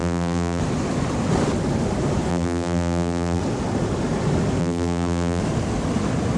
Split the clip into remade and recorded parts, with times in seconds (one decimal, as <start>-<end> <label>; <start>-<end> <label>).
0.0-0.6 remade; 0.6-2.3 recorded; 2.3-3.4 remade; 3.4-4.6 recorded; 4.6-5.4 remade; 5.4-6.4 recorded